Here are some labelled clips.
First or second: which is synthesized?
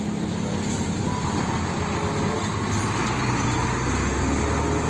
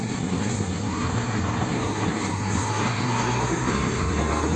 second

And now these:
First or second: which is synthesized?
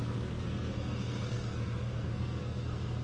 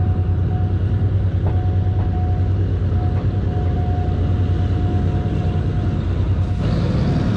first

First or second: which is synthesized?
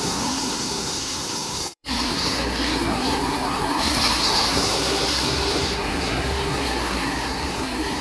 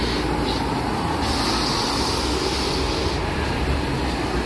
first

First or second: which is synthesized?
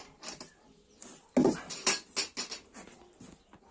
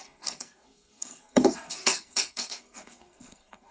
second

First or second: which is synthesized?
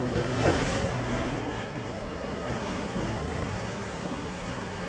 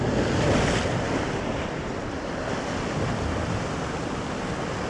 first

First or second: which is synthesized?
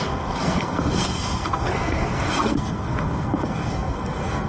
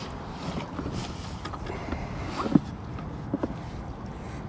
first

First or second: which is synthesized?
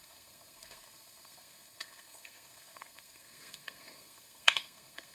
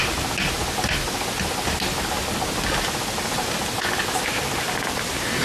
first